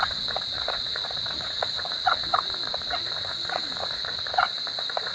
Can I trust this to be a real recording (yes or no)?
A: no